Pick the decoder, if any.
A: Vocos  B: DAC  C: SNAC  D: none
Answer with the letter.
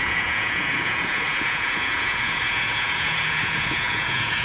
A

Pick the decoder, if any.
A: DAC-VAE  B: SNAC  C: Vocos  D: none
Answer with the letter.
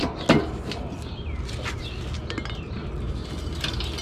D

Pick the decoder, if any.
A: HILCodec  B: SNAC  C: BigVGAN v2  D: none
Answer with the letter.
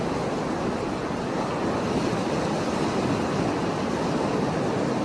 D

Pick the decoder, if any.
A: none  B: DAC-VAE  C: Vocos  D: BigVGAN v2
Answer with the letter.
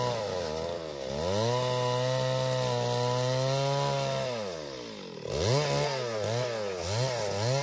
A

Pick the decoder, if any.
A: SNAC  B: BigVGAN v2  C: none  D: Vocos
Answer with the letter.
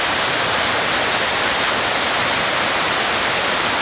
C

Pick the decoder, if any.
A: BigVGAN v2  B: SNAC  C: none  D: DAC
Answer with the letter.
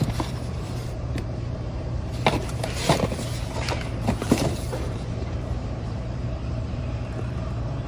A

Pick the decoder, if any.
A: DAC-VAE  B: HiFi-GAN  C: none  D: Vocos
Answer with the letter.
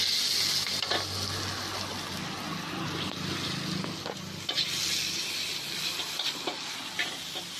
C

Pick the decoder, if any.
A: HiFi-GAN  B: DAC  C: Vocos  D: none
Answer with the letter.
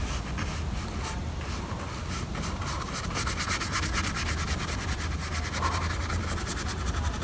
D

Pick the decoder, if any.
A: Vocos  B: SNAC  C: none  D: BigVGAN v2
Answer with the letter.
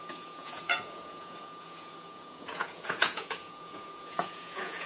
A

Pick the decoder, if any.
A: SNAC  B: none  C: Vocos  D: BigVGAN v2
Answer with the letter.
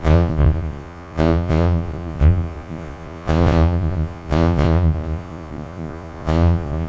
C